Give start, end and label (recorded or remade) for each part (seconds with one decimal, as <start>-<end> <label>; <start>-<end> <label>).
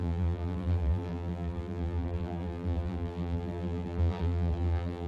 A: 0.0-5.1 remade